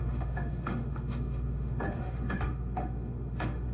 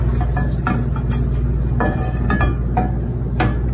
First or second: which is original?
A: second